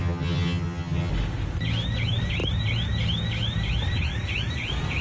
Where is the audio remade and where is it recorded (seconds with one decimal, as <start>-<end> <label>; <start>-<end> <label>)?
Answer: 0.0-1.1 remade; 1.1-5.0 recorded